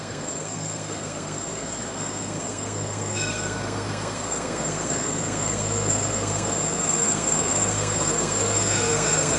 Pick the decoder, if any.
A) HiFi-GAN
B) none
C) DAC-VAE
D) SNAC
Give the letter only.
D